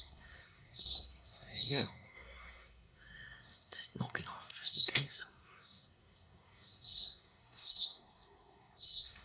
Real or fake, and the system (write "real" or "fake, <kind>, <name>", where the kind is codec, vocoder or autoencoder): fake, codec, SNAC